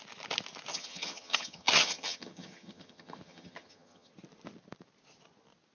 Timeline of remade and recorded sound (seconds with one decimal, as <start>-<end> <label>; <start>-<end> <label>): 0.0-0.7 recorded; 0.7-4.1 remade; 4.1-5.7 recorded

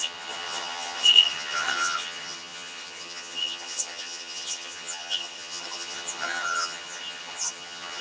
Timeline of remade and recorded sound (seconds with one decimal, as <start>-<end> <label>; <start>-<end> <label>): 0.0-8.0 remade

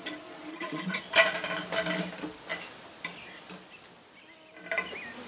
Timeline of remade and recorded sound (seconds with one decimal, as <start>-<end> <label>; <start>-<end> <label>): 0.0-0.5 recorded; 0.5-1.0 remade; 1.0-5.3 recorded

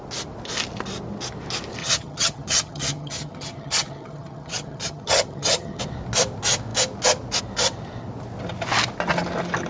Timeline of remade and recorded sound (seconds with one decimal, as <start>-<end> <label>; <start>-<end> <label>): 0.0-1.8 recorded; 1.8-5.8 remade; 5.8-9.7 recorded

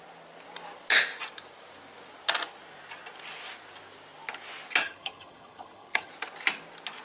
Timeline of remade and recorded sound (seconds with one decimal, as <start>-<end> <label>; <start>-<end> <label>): 0.0-4.8 recorded; 4.8-6.1 remade; 6.1-7.0 recorded

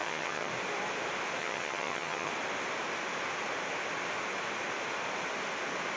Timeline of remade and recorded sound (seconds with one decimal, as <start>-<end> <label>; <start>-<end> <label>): 0.0-0.5 remade; 0.5-1.4 recorded; 1.4-2.3 remade; 2.3-6.0 recorded

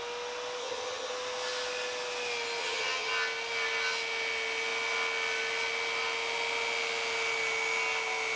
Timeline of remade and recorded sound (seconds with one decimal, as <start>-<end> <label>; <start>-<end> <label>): 0.0-0.6 recorded; 0.6-1.1 remade; 1.1-2.6 recorded; 2.6-3.1 remade; 3.1-8.4 recorded